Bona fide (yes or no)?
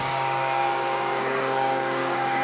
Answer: no